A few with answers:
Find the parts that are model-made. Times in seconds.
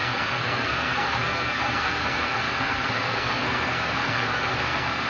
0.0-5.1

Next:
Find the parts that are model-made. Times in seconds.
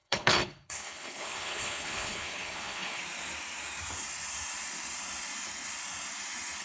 0.0-3.0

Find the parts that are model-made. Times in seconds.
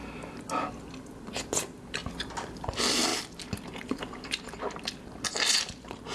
none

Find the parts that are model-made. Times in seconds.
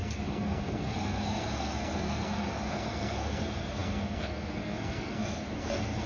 0.0-6.1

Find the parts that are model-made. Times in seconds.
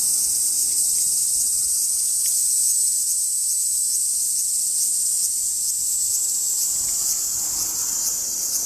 0.4-1.9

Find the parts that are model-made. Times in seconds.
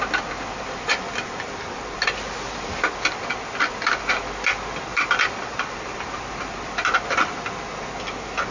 4.9-7.5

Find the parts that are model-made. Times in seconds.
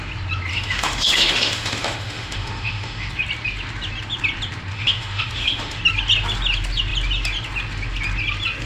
0.5-3.1; 4.7-5.8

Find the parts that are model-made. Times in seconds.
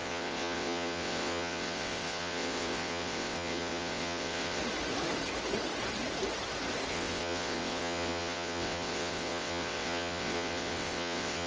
0.0-4.6; 6.9-11.5